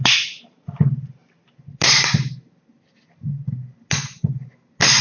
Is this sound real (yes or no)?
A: yes